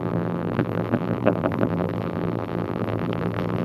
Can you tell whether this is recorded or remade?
remade